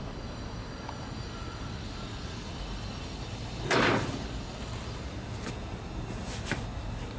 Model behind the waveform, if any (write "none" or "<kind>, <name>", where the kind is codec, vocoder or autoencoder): none